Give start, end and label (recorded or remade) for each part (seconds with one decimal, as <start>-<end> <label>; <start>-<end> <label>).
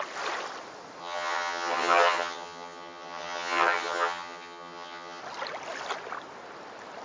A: 0.0-1.0 recorded; 1.0-5.2 remade; 5.2-7.0 recorded